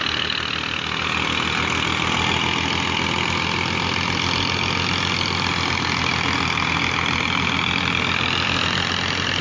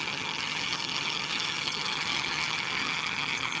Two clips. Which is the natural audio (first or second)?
first